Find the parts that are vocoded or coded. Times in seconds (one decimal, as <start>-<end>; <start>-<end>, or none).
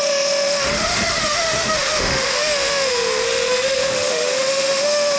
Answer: 0.0-5.2